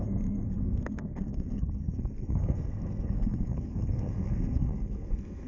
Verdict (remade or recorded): remade